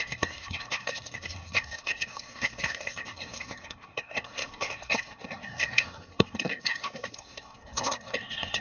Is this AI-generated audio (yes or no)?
yes